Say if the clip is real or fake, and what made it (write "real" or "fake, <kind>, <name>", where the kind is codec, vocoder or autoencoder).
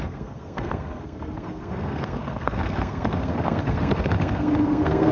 fake, codec, SNAC